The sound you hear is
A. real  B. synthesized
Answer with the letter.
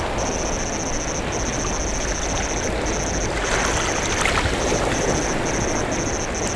A